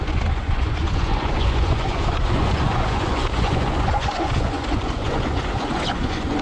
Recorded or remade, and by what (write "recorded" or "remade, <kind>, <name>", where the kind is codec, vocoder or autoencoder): remade, vocoder, Vocos